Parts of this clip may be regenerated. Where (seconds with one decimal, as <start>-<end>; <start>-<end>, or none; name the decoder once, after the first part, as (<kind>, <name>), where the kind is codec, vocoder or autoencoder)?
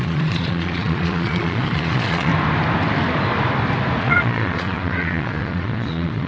0.0-2.3 (vocoder, Vocos); 4.0-6.3